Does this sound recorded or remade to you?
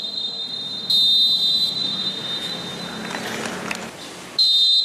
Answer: recorded